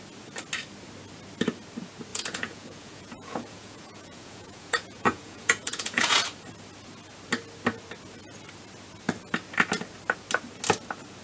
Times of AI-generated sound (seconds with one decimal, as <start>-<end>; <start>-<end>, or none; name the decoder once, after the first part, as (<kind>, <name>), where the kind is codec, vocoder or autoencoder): 2.1-6.2 (vocoder, Vocos)